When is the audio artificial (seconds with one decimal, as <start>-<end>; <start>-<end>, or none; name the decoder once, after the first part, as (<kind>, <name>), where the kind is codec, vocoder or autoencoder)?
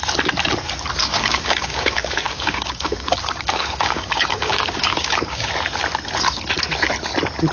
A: 1.0-5.5 (codec, DAC)